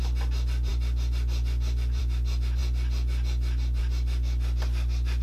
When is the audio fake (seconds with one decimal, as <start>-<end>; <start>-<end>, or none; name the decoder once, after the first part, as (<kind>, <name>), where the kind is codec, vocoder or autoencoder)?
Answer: none